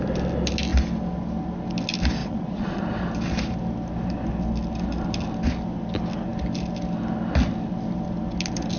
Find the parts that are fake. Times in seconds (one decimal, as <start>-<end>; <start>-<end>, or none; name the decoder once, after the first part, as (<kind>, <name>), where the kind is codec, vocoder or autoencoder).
2.2-2.8 (vocoder, Vocos)